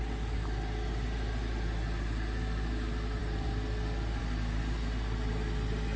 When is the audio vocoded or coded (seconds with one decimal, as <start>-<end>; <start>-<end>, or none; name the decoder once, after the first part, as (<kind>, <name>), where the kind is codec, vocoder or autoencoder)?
none